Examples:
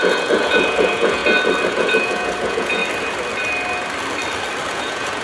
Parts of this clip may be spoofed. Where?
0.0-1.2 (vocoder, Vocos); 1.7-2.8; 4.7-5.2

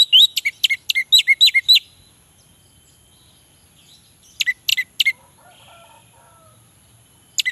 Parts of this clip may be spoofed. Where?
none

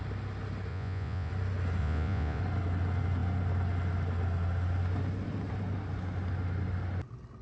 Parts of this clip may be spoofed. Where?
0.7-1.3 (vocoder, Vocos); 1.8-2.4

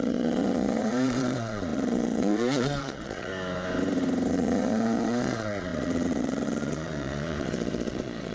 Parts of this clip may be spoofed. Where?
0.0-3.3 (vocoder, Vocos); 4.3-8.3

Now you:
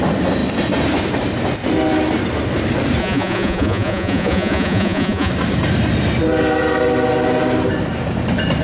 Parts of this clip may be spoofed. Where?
3.0-5.3 (vocoder, Vocos)